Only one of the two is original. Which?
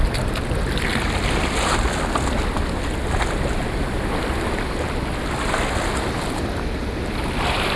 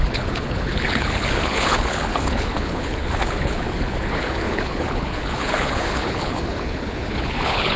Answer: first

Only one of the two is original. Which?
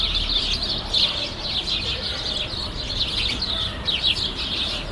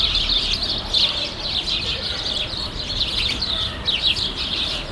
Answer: first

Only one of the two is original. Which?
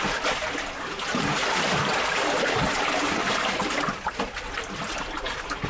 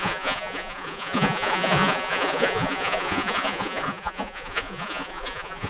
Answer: first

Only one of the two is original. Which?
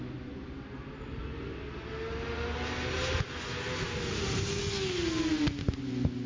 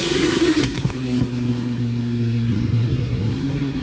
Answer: first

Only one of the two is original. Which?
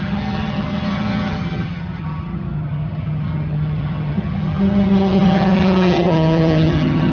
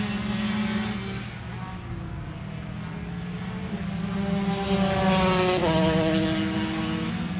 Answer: second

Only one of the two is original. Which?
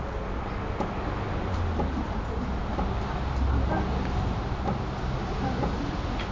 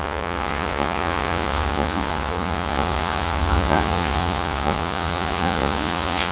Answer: first